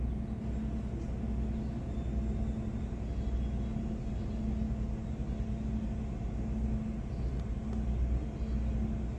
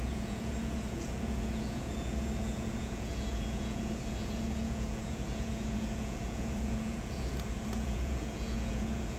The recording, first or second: first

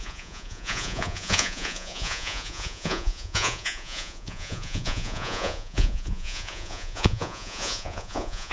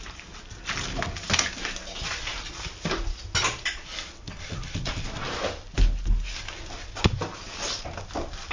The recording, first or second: second